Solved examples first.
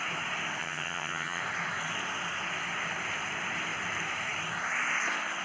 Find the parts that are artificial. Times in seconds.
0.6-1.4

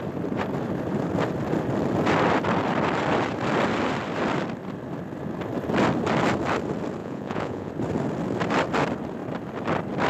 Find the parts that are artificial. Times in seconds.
7.0-7.7

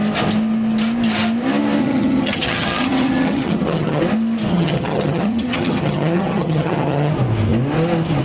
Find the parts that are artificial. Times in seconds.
1.8-4.0; 4.5-7.1

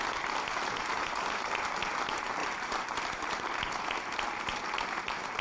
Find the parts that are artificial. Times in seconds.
2.4-3.4

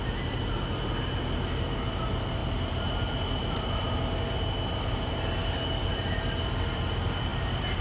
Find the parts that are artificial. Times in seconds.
5.4-5.9

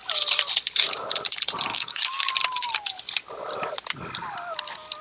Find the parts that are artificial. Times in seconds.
1.7-2.3

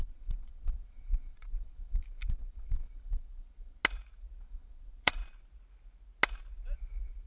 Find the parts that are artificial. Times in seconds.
0.0-3.8; 4.4-5.2